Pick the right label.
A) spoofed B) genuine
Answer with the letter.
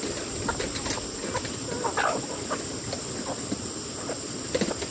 B